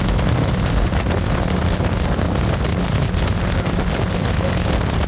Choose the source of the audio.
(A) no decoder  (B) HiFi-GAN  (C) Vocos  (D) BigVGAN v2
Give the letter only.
A